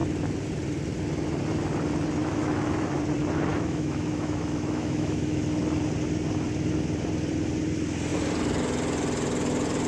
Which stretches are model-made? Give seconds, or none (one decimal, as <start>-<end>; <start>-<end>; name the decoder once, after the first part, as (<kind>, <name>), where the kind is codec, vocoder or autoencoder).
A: 2.2-3.0 (autoencoder, DAC-VAE); 3.5-5.4